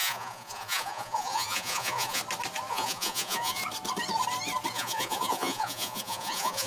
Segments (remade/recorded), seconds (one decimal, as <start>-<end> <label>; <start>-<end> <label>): 0.0-2.2 remade; 2.2-2.7 recorded; 2.7-3.6 remade; 3.6-4.7 recorded; 4.7-6.7 remade